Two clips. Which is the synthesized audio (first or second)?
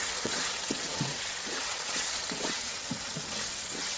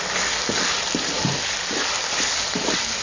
first